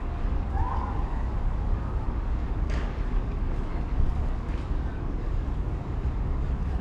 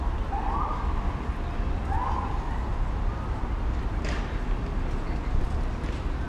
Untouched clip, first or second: second